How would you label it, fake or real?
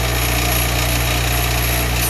real